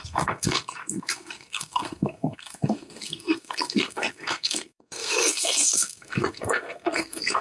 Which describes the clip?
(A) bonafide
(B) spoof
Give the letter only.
B